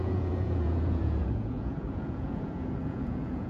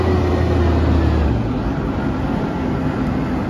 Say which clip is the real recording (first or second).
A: second